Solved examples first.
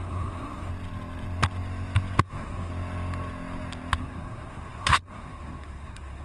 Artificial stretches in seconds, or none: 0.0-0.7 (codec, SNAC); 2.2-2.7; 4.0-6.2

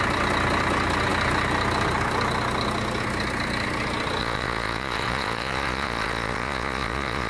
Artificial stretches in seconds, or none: 4.2-7.3 (vocoder, Vocos)

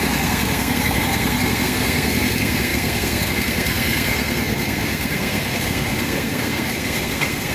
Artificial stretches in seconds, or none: 0.0-7.5 (codec, SNAC)